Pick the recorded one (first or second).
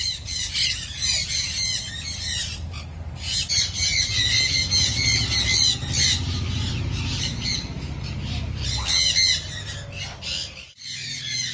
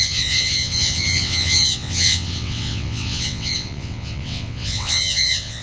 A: first